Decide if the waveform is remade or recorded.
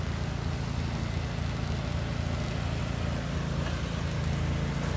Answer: recorded